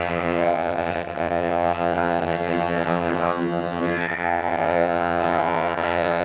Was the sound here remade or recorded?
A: remade